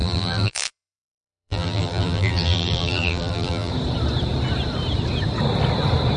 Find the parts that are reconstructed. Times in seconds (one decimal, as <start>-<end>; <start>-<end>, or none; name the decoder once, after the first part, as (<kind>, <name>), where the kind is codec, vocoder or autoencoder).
0.0-3.7 (vocoder, BigVGAN v2)